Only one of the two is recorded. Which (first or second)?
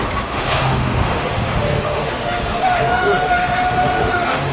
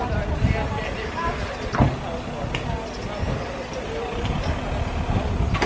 second